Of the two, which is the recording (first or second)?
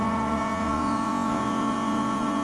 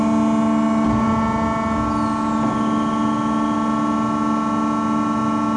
second